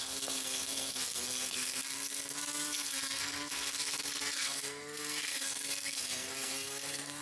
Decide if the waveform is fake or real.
fake